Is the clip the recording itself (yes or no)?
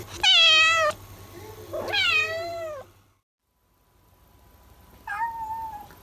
yes